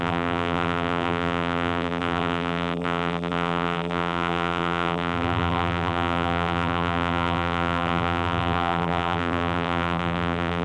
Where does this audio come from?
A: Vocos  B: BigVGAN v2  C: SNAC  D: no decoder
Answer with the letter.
B